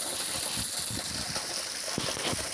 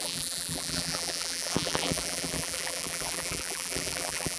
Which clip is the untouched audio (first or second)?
first